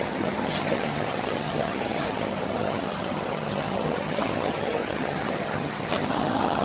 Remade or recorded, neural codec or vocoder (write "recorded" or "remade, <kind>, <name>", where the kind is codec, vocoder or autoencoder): remade, vocoder, HiFi-GAN